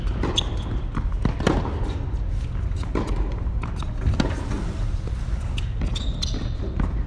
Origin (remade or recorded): recorded